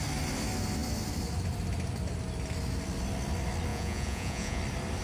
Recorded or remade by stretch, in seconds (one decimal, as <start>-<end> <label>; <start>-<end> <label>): 0.0-3.7 recorded; 3.7-4.6 remade; 4.6-5.0 recorded